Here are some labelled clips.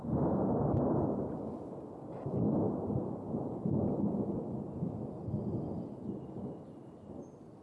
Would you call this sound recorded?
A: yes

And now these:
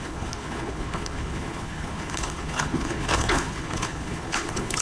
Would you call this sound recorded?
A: no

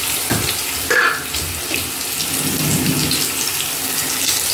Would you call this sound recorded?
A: yes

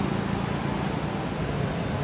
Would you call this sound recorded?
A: yes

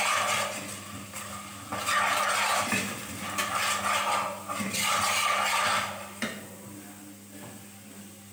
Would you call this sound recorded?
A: yes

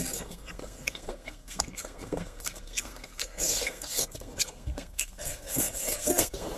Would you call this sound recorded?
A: no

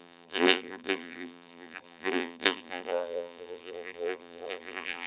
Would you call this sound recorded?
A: no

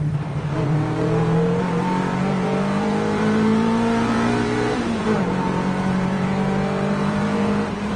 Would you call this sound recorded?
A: no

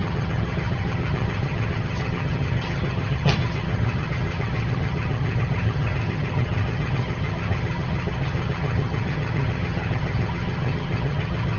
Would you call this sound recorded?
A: no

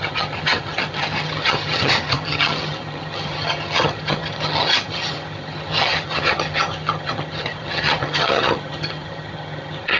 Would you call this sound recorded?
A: no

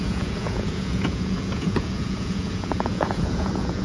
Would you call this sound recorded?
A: no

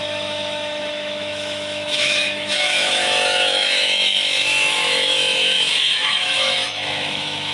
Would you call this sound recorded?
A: no